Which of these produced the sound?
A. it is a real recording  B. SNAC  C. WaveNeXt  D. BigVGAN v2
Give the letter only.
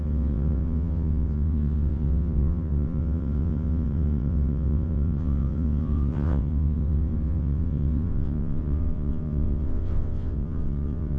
C